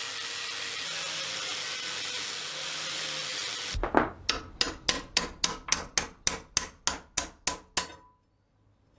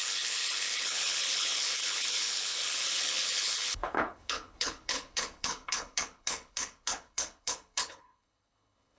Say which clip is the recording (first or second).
first